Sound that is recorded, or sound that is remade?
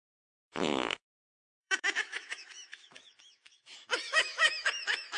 remade